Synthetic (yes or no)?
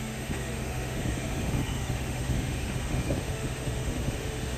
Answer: yes